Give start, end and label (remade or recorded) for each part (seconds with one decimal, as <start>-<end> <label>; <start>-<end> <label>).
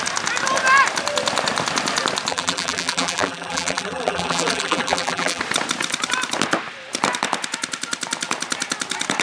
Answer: 0.0-2.3 recorded; 2.3-5.4 remade; 5.4-9.2 recorded